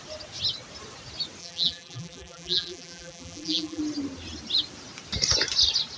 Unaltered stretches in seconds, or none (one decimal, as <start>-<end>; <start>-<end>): 0.0-1.4; 3.8-6.0